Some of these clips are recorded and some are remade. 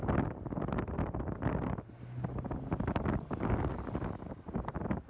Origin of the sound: recorded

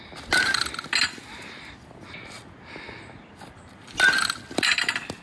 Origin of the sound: recorded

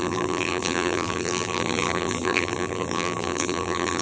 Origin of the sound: remade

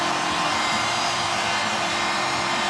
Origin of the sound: remade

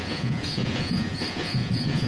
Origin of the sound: remade